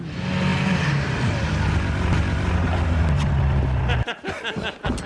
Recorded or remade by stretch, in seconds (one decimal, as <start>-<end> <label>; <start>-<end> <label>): 0.0-0.5 recorded; 0.5-1.4 remade; 1.4-5.1 recorded